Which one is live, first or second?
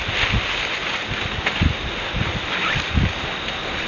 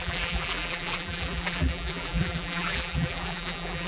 first